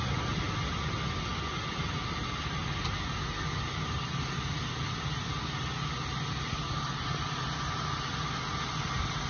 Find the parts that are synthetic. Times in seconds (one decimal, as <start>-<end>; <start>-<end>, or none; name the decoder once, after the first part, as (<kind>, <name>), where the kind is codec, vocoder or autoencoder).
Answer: none